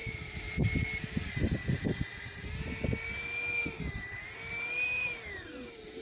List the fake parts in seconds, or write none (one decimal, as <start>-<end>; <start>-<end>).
1.1-1.6; 3.6-6.0